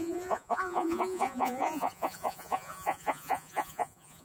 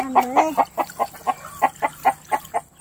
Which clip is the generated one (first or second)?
first